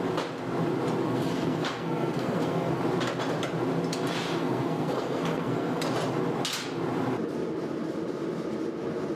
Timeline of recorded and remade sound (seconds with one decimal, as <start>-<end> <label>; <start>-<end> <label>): 0.0-1.0 recorded; 1.0-2.8 remade; 2.8-4.4 recorded; 4.4-5.8 remade; 5.8-9.2 recorded